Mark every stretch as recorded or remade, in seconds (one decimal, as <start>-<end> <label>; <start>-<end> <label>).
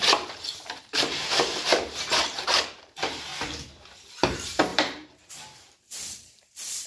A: 0.0-3.3 remade; 3.3-4.1 recorded; 4.1-6.9 remade